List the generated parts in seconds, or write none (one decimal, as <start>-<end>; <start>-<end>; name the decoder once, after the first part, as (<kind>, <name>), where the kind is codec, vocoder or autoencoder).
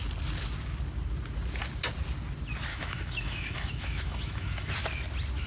2.7-4.7 (autoencoder, DAC-VAE)